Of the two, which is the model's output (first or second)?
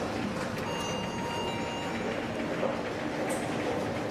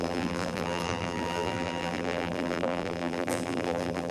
second